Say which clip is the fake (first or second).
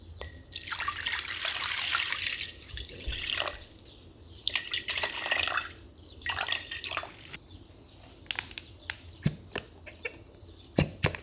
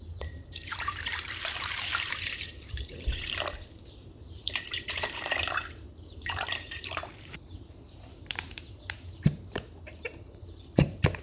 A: second